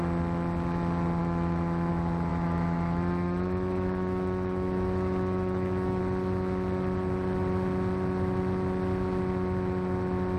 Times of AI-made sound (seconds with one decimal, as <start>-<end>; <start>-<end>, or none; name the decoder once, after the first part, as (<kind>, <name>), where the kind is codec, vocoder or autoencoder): 1.2-1.9 (autoencoder, DAC-VAE); 2.3-6.0